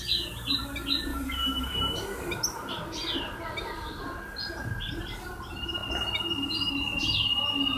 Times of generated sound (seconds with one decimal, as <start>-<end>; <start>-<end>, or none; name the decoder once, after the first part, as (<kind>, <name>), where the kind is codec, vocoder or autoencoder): 1.1-1.8 (codec, DAC)